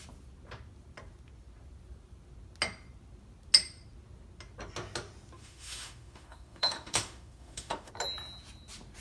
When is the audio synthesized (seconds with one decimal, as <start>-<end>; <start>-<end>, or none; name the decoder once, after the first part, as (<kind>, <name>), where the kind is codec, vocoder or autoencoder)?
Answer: 5.4-7.9 (autoencoder, DAC-VAE)